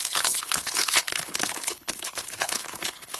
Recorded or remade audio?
remade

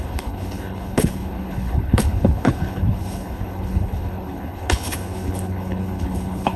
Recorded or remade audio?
remade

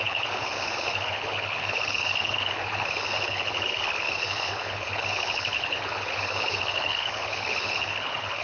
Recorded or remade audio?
remade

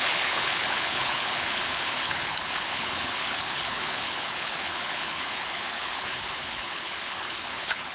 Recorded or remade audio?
remade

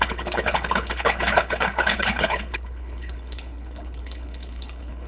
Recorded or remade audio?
remade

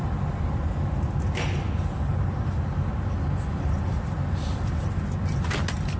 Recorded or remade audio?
recorded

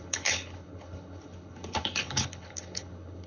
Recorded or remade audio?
remade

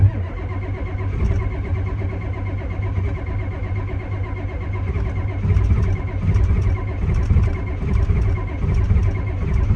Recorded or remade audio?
recorded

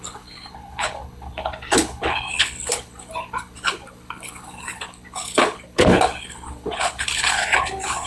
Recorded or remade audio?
remade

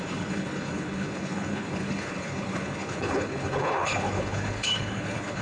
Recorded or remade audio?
remade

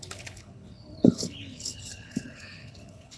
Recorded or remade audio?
remade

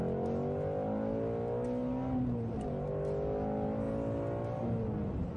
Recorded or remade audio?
recorded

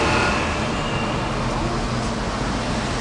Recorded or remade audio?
recorded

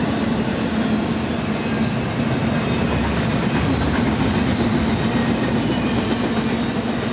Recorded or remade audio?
recorded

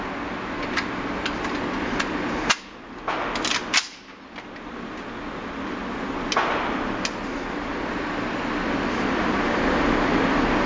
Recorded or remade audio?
recorded